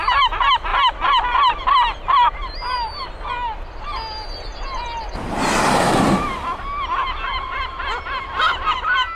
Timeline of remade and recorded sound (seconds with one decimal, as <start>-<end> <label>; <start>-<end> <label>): 0.0-4.5 recorded; 4.5-6.3 remade; 6.3-9.2 recorded